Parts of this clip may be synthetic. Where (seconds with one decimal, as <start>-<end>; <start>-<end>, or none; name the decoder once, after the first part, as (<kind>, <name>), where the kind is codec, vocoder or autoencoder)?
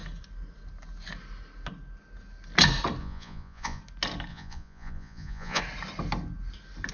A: 3.0-3.8 (vocoder, Vocos); 4.3-5.6